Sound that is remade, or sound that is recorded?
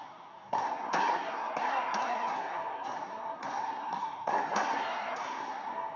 remade